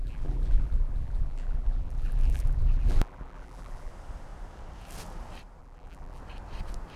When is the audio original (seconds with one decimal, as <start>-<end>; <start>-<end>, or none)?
3.9-5.6; 6.2-7.0